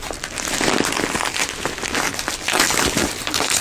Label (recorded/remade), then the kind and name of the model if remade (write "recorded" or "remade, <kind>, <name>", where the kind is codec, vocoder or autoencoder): recorded